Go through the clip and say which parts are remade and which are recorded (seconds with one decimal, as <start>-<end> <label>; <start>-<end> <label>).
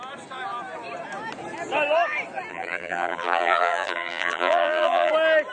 0.0-2.5 recorded; 2.5-5.1 remade; 5.1-5.5 recorded